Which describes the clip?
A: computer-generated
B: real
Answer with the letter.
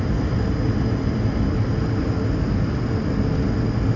B